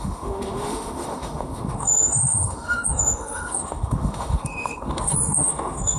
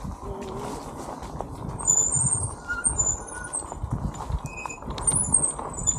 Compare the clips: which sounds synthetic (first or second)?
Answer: first